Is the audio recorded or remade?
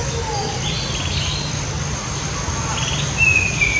recorded